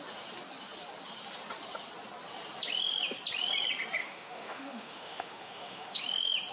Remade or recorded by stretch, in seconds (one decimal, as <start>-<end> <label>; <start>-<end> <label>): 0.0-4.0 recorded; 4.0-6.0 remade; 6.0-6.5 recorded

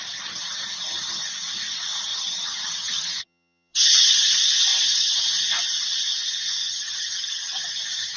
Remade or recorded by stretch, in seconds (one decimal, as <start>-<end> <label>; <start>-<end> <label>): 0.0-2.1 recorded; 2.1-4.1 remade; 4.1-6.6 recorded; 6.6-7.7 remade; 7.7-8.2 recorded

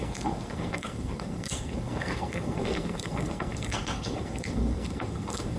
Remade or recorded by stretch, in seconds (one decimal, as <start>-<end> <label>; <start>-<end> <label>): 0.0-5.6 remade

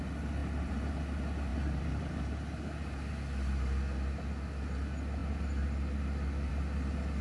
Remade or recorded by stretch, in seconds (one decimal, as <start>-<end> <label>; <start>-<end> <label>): 0.0-0.4 recorded; 0.4-1.0 remade; 1.0-1.5 recorded; 1.5-3.1 remade; 3.1-7.2 recorded

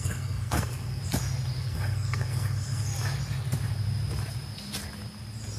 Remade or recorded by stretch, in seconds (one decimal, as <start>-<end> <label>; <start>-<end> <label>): 0.0-1.0 remade; 1.0-1.6 recorded; 1.6-2.9 remade; 2.9-5.6 recorded

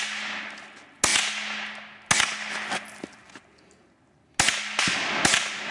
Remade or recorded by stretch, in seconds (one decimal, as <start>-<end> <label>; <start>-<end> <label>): 0.0-5.7 recorded